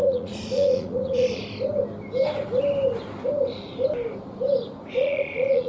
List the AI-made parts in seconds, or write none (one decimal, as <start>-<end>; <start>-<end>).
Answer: 0.0-1.4; 4.8-5.7